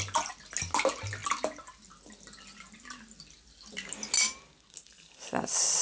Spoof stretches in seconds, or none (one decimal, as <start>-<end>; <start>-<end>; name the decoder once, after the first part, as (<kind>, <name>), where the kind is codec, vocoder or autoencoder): none